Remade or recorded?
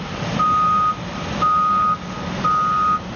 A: recorded